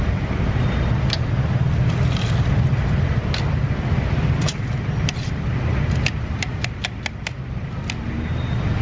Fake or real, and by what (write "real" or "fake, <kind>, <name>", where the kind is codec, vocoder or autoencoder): real